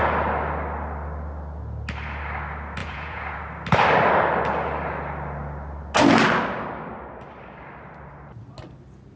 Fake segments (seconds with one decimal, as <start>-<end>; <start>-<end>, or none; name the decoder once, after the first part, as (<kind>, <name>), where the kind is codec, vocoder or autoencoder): 2.8-3.4 (vocoder, Vocos)